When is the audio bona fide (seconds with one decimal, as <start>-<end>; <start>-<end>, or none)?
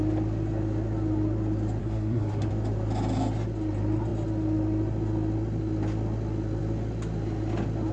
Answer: 0.0-1.8; 2.5-7.9